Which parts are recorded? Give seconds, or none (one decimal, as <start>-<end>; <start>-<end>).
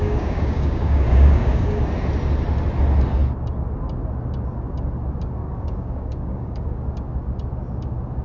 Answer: 1.8-5.4; 6.8-8.2